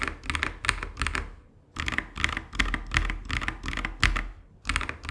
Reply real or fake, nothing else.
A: real